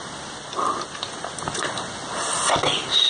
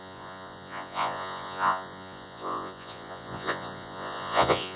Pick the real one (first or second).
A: first